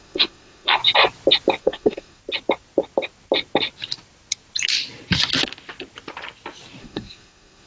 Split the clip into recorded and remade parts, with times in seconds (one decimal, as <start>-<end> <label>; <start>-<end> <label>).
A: 0.0-0.8 remade; 0.8-1.6 recorded; 1.6-2.2 remade; 2.2-6.8 recorded; 6.8-7.7 remade